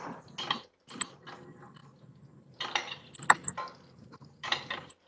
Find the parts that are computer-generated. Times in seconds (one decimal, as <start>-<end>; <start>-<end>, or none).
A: none